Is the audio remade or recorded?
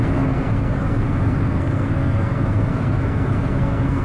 remade